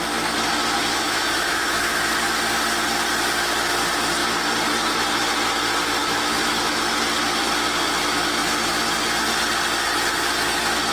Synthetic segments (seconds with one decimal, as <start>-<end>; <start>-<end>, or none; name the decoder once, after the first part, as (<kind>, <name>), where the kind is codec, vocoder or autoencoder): 0.8-2.0 (autoencoder, DAC-VAE); 6.0-6.8